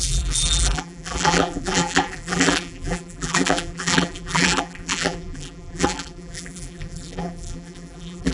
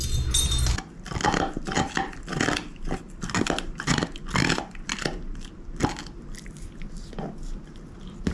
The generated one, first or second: first